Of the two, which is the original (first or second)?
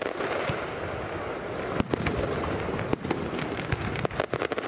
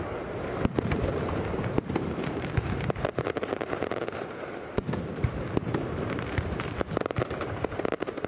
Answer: first